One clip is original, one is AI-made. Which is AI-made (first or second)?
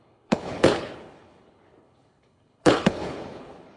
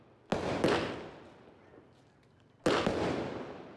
first